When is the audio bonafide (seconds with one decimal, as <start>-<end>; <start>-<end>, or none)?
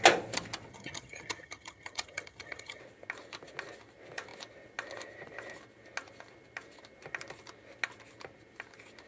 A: 0.0-0.7; 2.8-9.1